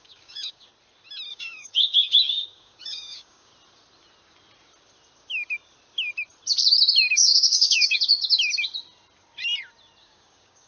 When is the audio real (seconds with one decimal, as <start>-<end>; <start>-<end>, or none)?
0.7-1.3; 3.5-7.1; 8.0-10.0